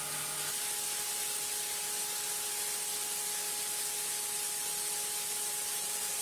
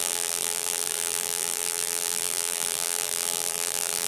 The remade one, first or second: second